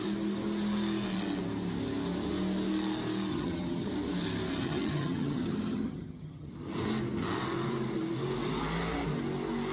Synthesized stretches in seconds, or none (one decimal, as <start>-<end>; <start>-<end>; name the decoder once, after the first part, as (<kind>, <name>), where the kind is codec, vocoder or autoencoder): 3.3-3.9 (vocoder, HiFi-GAN); 4.6-6.5